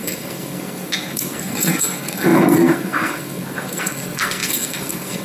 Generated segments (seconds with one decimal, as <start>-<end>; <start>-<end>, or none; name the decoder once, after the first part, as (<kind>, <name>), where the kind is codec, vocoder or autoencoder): 0.0-5.2 (codec, SNAC)